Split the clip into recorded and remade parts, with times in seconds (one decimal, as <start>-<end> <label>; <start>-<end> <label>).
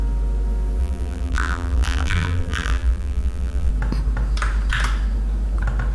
0.0-0.8 recorded; 0.8-3.7 remade; 3.7-5.9 recorded